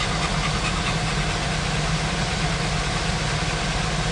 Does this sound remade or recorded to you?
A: recorded